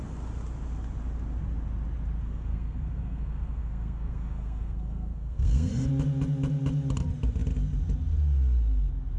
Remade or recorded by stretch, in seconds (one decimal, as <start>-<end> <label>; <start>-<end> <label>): 0.0-2.2 recorded; 2.2-5.7 remade; 5.7-9.2 recorded

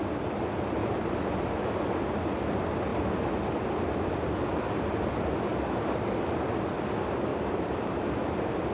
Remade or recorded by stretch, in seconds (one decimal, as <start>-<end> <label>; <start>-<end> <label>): 0.0-0.8 recorded; 0.8-1.3 remade; 1.3-7.3 recorded; 7.3-8.7 remade

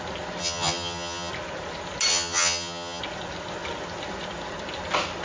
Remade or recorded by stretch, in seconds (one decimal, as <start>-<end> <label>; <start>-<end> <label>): 0.0-0.4 recorded; 0.4-1.3 remade; 1.3-2.1 recorded; 2.1-3.0 remade; 3.0-5.2 recorded

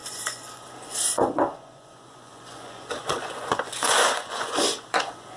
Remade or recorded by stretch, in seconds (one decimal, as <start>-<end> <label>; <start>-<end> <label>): 0.0-5.4 remade

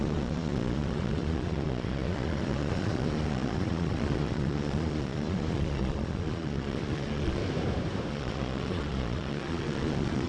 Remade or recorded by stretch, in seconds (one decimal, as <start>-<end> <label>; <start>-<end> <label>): 0.0-7.4 remade; 7.4-8.1 recorded; 8.1-10.3 remade